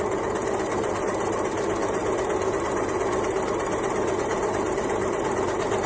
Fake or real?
fake